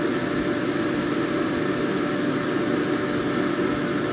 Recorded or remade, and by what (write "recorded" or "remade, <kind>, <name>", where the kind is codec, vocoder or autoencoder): recorded